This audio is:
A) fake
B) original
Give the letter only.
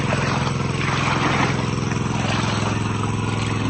B